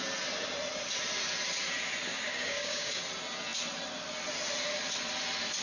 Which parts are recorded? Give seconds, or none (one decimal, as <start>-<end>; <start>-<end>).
0.0-2.1; 3.0-5.6